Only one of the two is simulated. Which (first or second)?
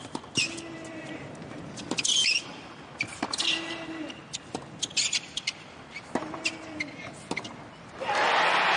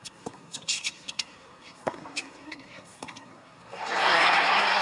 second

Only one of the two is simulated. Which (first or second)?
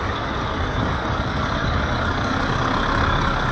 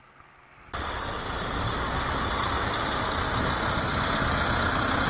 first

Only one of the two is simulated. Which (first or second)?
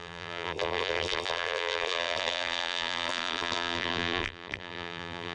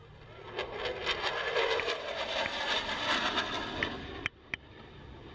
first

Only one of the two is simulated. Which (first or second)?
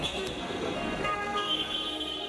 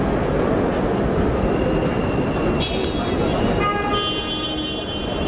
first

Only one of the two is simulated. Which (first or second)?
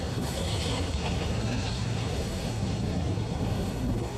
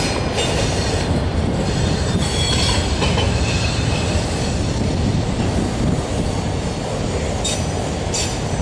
first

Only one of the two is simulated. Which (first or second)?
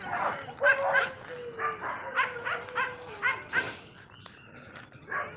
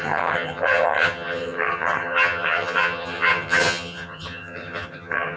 second